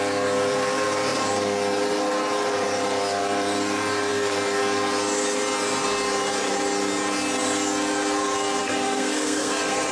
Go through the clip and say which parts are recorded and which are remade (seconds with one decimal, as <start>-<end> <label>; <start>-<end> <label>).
0.0-8.6 recorded; 8.6-9.9 remade